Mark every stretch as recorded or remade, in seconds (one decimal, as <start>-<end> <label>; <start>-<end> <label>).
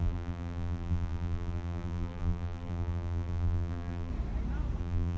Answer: 0.0-4.1 remade; 4.1-4.8 recorded; 4.8-5.2 remade